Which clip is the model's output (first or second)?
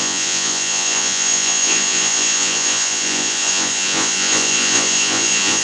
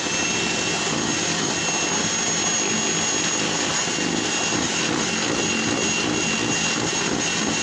first